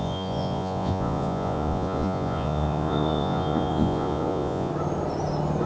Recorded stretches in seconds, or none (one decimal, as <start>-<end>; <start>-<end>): 4.7-5.7

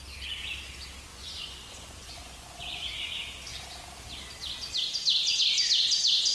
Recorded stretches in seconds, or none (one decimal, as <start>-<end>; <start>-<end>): 0.0-1.1; 3.1-6.3